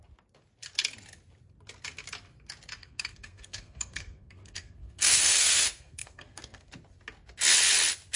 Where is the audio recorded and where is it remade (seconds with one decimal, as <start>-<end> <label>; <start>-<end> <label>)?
0.0-2.8 recorded; 2.8-6.7 remade; 6.7-8.2 recorded